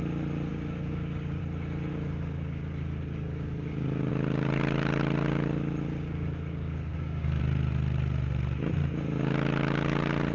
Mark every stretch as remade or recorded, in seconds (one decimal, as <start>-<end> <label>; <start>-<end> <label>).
0.0-0.5 recorded; 0.5-1.4 remade; 1.4-1.9 recorded; 1.9-4.1 remade; 4.1-5.9 recorded; 5.9-7.4 remade; 7.4-10.3 recorded